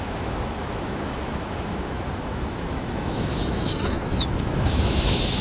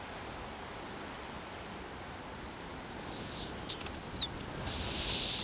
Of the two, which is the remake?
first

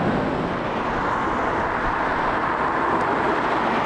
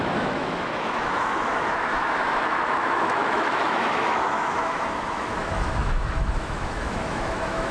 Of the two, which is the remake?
second